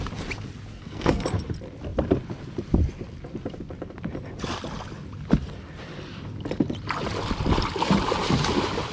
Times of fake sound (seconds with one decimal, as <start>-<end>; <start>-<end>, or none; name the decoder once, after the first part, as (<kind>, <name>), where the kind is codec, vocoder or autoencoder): 0.7-1.2 (codec, SNAC)